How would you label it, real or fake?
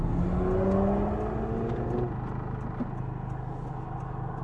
real